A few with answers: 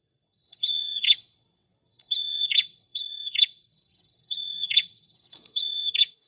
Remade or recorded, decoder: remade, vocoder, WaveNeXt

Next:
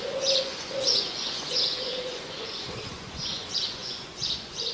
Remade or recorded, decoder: remade, vocoder, Vocos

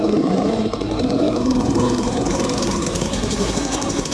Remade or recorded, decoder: remade, codec, SNAC